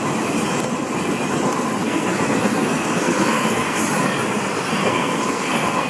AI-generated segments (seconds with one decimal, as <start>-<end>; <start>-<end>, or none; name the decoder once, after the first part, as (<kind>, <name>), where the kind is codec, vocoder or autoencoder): 1.8-3.8 (codec, SNAC); 4.8-5.9